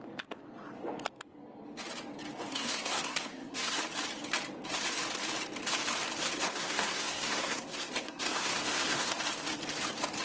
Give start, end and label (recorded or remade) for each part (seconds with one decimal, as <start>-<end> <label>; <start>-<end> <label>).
0.0-2.5 recorded; 2.5-3.8 remade; 3.8-6.2 recorded; 6.2-9.1 remade; 9.1-10.2 recorded